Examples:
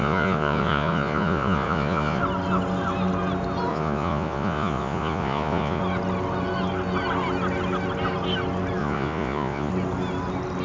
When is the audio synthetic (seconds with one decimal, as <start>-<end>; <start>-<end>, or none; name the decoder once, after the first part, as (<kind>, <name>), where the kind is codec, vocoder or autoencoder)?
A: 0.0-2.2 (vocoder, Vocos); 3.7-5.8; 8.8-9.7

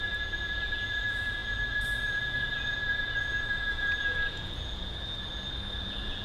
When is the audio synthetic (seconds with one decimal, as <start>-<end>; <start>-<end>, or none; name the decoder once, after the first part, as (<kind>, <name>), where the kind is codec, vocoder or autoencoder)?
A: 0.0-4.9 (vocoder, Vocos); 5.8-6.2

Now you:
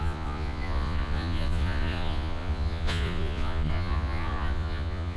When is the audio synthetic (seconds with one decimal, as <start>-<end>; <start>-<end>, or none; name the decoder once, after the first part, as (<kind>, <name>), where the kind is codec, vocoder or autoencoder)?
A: 0.0-5.2 (vocoder, Vocos)

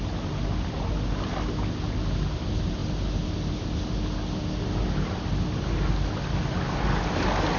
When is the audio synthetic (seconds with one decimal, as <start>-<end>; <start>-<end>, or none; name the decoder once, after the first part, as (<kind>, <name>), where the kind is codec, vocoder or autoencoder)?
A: none